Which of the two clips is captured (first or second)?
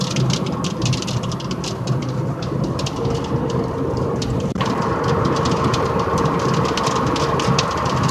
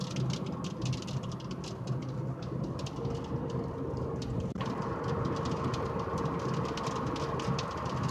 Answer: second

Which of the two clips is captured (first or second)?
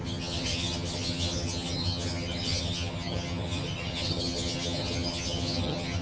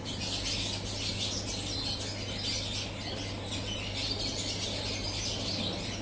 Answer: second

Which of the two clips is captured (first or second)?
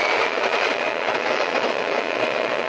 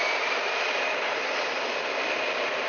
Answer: second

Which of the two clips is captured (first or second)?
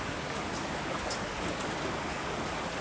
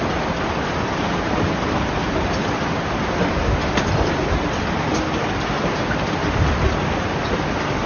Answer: second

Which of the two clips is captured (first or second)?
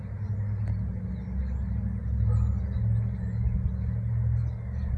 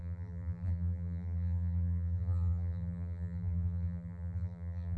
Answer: first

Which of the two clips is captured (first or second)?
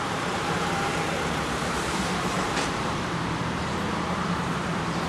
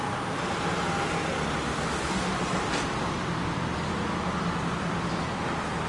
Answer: second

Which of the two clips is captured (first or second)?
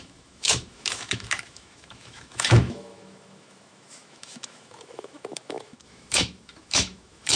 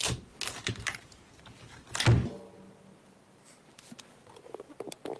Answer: second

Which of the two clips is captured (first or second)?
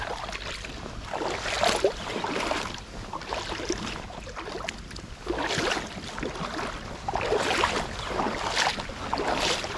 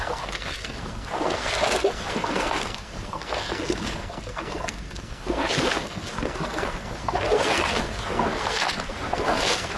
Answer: first